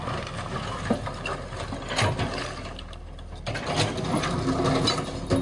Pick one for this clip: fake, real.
real